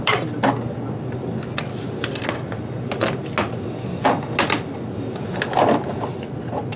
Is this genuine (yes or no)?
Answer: yes